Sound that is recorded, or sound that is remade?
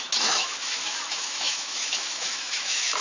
remade